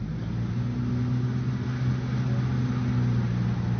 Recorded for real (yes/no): yes